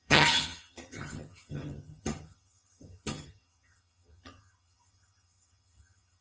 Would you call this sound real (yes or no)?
no